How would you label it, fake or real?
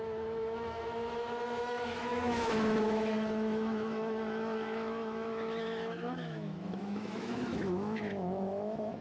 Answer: fake